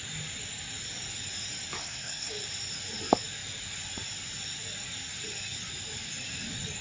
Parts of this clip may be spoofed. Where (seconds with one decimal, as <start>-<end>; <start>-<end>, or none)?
1.8-2.3

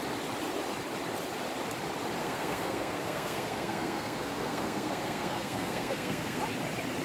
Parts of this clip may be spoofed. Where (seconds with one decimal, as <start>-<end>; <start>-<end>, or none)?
2.2-6.4

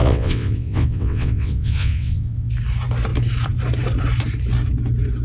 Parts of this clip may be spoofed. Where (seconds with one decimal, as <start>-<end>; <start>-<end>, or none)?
0.0-2.5

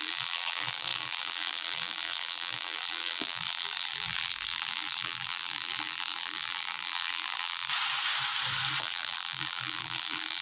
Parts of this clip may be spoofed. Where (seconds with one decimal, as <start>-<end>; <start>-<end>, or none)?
0.0-7.7; 8.8-10.4

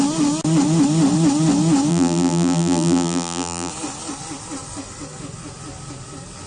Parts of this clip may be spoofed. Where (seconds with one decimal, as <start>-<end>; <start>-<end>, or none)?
1.9-3.7

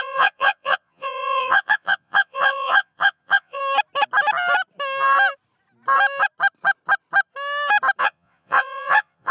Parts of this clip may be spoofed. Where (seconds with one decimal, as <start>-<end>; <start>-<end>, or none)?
0.0-3.6; 8.0-9.3